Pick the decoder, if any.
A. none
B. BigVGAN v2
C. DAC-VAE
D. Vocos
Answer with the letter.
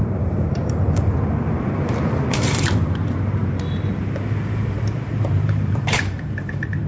B